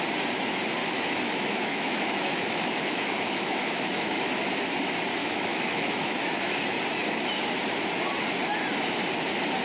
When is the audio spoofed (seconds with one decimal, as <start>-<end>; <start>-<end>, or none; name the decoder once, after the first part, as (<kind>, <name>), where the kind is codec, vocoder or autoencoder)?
0.8-4.3 (autoencoder, DAC-VAE); 5.2-6.2